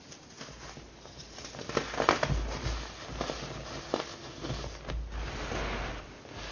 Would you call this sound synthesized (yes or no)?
no